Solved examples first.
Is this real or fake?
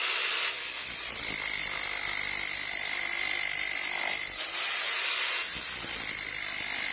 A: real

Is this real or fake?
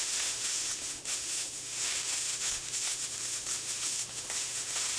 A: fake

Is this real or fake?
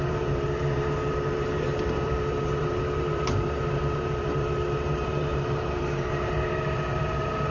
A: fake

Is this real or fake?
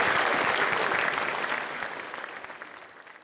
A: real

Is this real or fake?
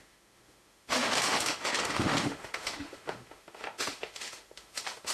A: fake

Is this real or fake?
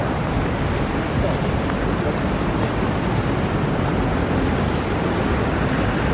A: real